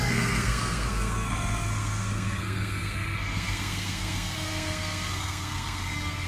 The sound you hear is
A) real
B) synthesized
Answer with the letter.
B